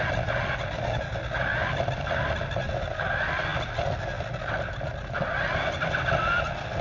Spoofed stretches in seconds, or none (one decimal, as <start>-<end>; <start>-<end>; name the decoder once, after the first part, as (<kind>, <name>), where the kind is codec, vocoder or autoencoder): none